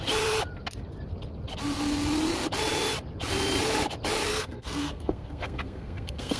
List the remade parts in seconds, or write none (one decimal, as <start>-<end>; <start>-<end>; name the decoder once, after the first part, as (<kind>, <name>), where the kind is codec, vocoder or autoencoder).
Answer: 4.3-6.4 (codec, SNAC)